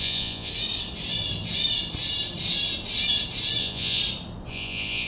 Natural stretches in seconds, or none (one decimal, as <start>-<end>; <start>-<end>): 0.5-3.6; 4.0-4.5